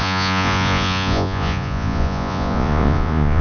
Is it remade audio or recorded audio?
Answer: remade